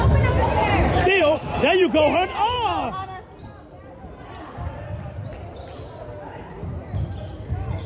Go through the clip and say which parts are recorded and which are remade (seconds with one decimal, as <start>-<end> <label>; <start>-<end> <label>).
0.0-0.4 recorded; 0.4-1.4 remade; 1.4-7.9 recorded